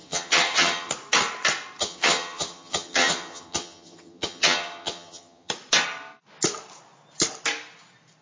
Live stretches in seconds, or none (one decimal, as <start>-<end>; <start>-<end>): 0.9-1.8; 5.5-8.2